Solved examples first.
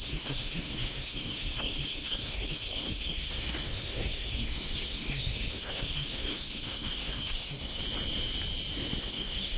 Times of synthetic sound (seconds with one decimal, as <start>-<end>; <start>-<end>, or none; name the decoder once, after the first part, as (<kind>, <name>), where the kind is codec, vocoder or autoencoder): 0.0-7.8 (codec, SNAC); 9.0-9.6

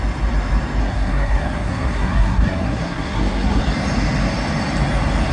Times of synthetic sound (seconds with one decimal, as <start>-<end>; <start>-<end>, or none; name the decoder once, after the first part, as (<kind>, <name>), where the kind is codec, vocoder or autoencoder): 0.8-3.6 (codec, SNAC)

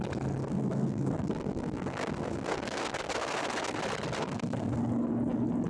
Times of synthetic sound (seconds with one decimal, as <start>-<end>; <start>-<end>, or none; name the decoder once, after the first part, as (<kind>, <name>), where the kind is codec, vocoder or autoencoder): 0.4-3.8 (codec, SNAC); 4.2-4.8

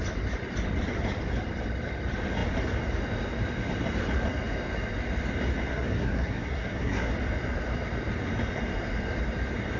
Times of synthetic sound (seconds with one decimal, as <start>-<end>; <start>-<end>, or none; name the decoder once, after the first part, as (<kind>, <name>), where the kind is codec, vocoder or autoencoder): 5.7-7.1 (codec, SNAC)

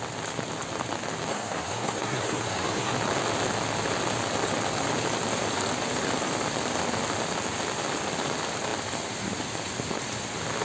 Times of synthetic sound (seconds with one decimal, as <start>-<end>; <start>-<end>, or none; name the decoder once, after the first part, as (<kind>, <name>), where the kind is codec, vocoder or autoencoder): 1.3-2.9 (codec, SNAC)

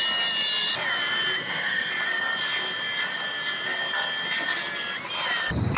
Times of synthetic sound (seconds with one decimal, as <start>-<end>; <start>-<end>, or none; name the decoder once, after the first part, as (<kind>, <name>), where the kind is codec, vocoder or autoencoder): 1.4-1.9 (codec, SNAC)